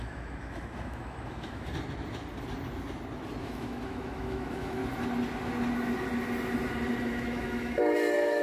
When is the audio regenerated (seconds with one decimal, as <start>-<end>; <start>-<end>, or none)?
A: 0.0-1.7; 3.4-4.8; 7.0-8.4